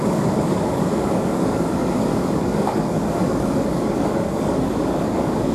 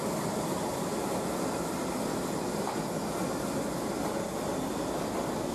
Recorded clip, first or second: second